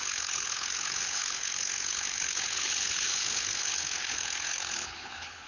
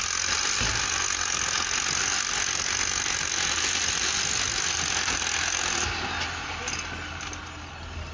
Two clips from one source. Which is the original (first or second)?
second